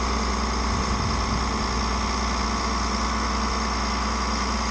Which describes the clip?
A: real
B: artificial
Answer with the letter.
A